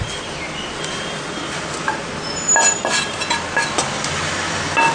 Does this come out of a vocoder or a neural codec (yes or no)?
no